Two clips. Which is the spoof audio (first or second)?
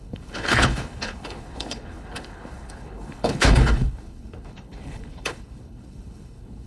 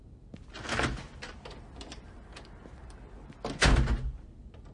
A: first